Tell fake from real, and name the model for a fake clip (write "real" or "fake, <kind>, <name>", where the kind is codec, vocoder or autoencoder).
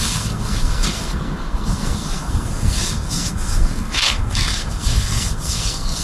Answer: fake, codec, SNAC